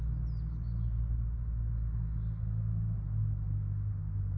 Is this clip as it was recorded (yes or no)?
yes